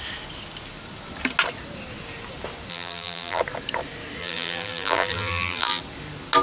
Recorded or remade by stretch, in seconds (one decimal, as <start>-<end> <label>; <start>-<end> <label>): 0.0-2.7 recorded; 2.7-3.4 remade; 3.4-4.2 recorded; 4.2-5.8 remade; 5.8-6.4 recorded